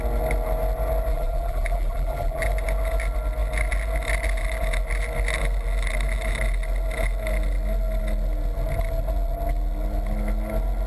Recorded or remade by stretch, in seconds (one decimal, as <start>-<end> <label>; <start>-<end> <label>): 0.0-1.1 recorded; 1.1-2.4 remade; 2.4-10.9 recorded